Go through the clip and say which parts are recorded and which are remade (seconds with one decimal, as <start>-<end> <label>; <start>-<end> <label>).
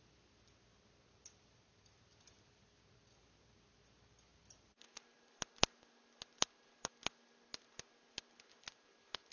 0.0-9.3 recorded